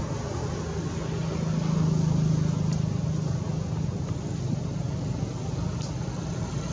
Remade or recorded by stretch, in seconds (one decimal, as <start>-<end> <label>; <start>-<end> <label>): 0.0-6.7 recorded